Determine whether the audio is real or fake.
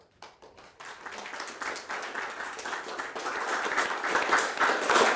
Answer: real